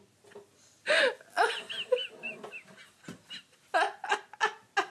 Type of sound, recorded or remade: recorded